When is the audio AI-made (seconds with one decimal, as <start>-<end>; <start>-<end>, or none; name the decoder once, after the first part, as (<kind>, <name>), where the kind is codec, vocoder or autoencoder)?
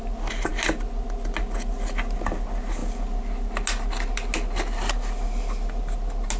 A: none